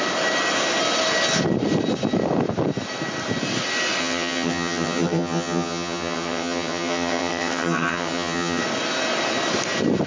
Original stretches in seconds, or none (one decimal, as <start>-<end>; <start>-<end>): 0.0-4.0; 8.6-10.1